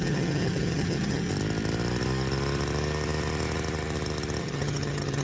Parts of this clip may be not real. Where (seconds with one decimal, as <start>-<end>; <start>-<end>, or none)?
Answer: 0.0-1.3; 4.4-5.2